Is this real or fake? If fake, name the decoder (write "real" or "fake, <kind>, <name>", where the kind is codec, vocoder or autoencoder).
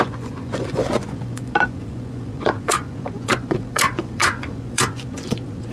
fake, vocoder, Vocos